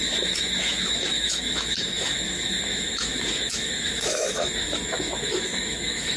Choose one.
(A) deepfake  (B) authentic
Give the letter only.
A